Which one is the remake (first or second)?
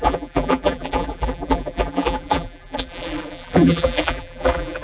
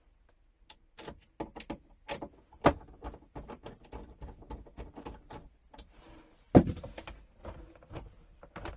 first